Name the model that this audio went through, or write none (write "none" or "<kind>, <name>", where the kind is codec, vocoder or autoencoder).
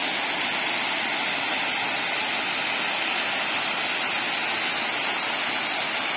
none